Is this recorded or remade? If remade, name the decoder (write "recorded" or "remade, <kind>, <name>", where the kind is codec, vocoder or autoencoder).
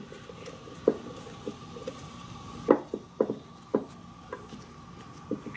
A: recorded